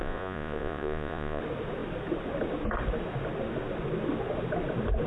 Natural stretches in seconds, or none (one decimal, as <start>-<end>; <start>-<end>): 1.4-5.1